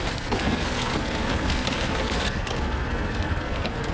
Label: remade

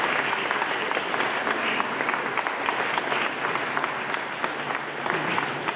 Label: recorded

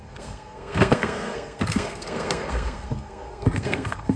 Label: remade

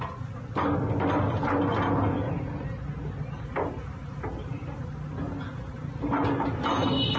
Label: recorded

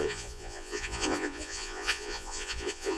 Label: remade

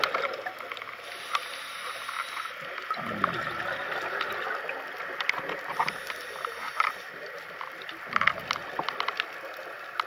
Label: recorded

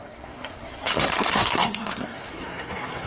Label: remade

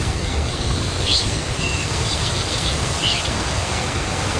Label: remade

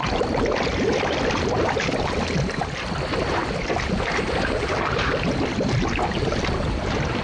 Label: recorded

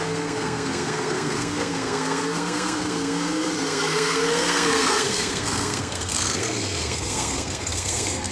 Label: remade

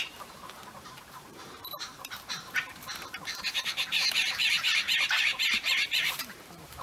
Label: remade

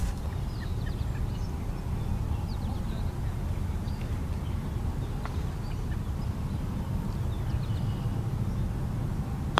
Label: recorded